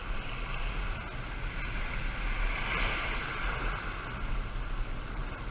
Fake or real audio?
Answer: real